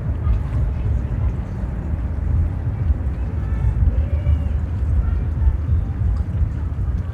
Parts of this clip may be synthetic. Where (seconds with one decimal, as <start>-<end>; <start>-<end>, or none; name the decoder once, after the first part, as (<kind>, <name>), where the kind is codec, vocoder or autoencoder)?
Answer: 0.0-7.1 (vocoder, BigVGAN v2)